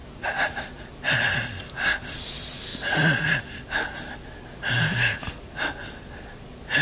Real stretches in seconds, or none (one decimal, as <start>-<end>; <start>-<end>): 0.0-6.8